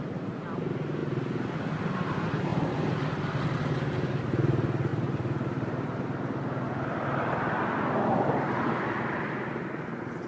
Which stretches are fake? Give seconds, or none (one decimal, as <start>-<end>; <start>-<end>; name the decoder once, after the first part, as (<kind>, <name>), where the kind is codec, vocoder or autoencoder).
4.9-7.6 (vocoder, BigVGAN v2)